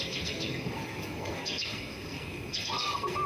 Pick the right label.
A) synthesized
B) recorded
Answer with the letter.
A